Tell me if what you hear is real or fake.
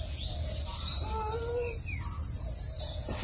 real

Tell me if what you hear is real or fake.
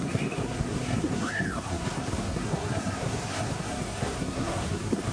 fake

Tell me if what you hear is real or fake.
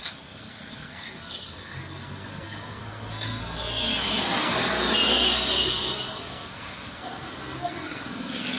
fake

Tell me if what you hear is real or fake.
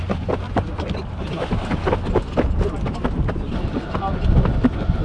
real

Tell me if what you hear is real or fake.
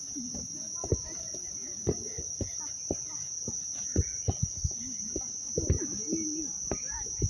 real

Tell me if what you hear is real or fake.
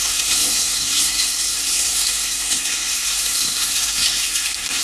fake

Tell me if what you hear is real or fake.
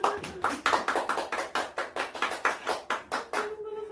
real